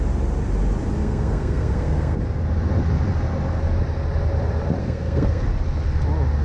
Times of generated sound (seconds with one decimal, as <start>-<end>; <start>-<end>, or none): 1.0-2.2; 4.8-5.4